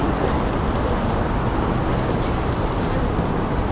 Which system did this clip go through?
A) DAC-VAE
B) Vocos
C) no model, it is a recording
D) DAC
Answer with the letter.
C